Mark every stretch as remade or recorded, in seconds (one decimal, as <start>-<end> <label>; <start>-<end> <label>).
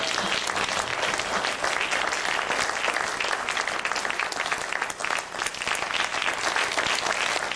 0.0-7.6 recorded